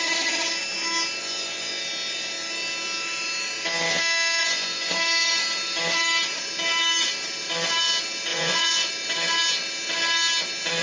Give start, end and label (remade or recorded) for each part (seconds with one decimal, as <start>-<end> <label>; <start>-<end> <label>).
0.0-1.2 recorded; 1.2-1.8 remade; 1.8-4.4 recorded; 4.4-4.9 remade; 4.9-8.3 recorded; 8.3-8.9 remade; 8.9-10.8 recorded